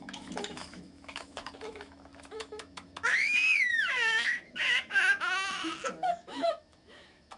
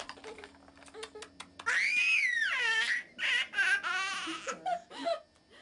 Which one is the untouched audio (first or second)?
second